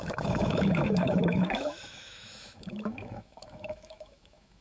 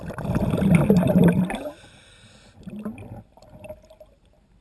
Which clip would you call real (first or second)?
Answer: second